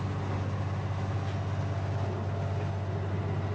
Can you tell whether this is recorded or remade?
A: recorded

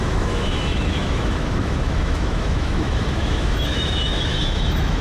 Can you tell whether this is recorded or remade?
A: remade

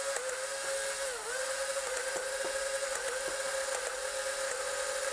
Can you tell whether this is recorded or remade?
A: recorded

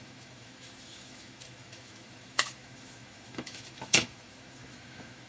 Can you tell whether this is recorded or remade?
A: remade